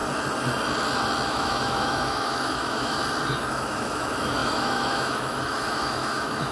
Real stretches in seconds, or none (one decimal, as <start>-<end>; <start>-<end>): 0.0-1.3; 3.0-3.5